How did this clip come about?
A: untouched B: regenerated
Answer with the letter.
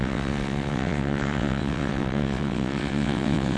B